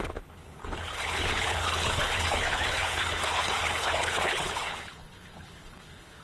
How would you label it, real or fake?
fake